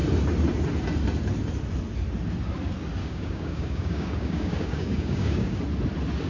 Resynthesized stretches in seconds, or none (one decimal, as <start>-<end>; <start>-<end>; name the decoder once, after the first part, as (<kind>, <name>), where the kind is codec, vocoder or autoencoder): 3.0-5.6 (codec, DAC)